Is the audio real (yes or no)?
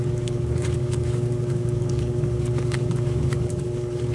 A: no